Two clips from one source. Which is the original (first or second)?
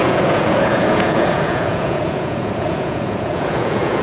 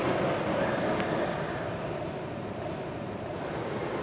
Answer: second